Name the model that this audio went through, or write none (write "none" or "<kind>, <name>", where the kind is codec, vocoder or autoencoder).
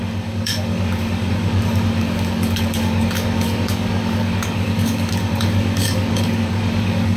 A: codec, DAC